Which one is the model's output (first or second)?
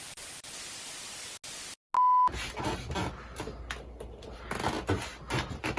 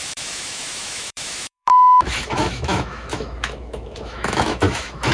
second